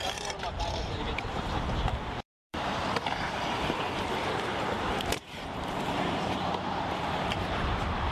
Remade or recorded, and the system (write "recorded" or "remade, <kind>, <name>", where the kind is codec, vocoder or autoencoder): remade, vocoder, BigVGAN v2